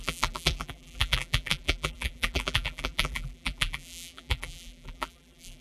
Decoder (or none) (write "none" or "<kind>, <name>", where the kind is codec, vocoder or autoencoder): vocoder, BigVGAN v2